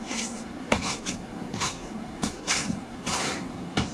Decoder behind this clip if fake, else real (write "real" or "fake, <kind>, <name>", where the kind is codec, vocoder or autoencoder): fake, codec, SNAC